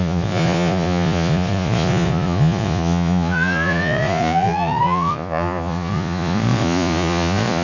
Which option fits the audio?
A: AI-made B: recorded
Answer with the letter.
A